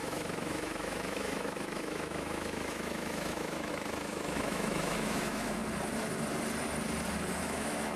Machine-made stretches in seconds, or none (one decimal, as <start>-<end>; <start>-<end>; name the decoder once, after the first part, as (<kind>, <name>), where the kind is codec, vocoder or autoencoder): 0.0-5.6 (autoencoder, DAC-VAE); 7.4-8.0